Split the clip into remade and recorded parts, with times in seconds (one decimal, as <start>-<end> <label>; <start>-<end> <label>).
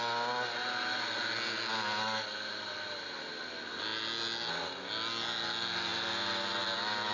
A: 0.0-7.1 recorded